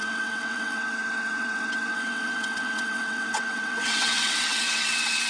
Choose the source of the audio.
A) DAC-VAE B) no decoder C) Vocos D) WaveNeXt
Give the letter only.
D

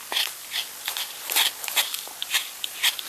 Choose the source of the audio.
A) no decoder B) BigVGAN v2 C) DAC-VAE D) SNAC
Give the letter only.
B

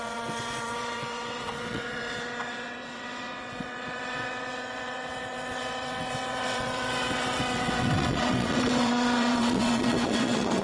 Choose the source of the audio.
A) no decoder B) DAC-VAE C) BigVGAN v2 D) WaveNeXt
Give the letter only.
D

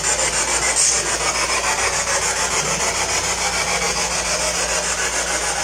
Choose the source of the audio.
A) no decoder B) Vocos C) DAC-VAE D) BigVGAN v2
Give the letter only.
A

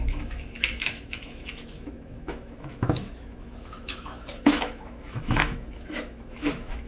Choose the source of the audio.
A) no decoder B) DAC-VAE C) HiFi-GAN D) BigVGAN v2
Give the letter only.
B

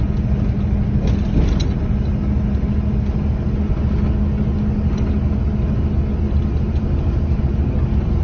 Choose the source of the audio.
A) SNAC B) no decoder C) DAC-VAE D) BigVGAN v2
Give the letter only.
B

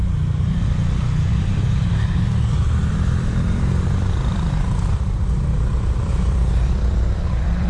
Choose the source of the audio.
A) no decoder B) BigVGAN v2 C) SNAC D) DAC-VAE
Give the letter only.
B